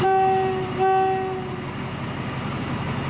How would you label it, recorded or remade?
recorded